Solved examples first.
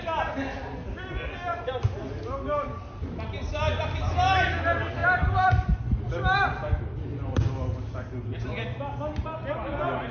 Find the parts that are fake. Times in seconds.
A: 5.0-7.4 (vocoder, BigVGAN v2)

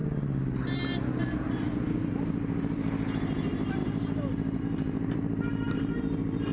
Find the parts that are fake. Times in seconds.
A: 2.1-6.5 (vocoder, BigVGAN v2)

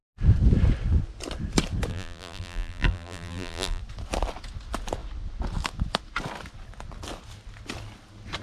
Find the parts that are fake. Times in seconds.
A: 1.9-3.8 (vocoder, BigVGAN v2)

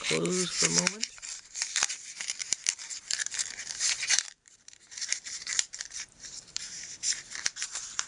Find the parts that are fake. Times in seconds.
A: 0.0-8.1 (vocoder, BigVGAN v2)

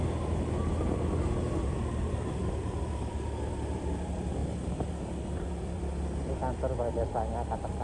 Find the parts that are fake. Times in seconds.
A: 0.0-0.6 (vocoder, BigVGAN v2); 2.0-7.8

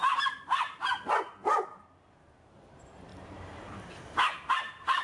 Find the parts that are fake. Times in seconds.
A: 0.0-5.0 (vocoder, BigVGAN v2)

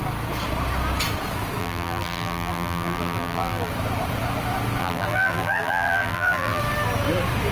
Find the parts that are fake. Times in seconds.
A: 1.6-3.7 (vocoder, BigVGAN v2); 4.8-6.6

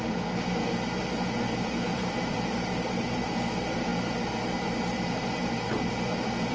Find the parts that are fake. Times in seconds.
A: 1.9-3.2 (vocoder, BigVGAN v2)